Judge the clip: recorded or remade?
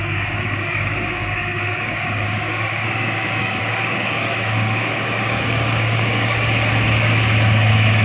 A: remade